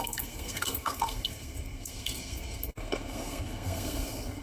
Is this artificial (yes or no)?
yes